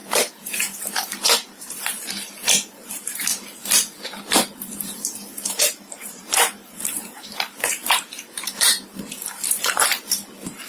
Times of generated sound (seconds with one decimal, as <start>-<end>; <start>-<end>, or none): 0.0-3.3; 4.0-10.7